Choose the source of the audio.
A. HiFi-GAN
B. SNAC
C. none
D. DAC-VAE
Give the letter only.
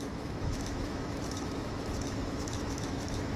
D